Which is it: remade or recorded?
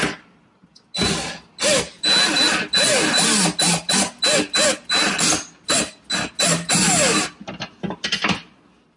recorded